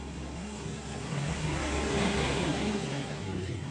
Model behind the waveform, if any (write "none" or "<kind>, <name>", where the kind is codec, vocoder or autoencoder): codec, SNAC